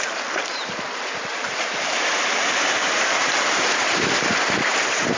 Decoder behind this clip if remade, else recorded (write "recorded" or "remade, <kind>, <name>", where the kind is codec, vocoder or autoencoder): remade, vocoder, BigVGAN v2